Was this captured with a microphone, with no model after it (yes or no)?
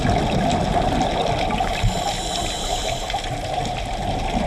yes